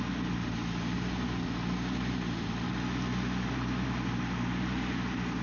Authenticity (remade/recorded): recorded